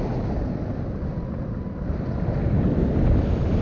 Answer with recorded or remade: recorded